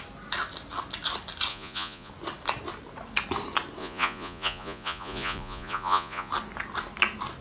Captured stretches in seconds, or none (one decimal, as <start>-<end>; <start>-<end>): 0.0-1.5; 2.1-3.8; 6.3-7.4